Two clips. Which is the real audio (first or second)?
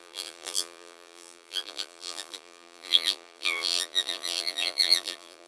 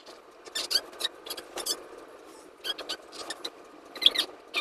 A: second